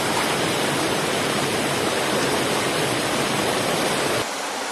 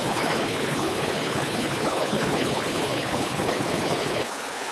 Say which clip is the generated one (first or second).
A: second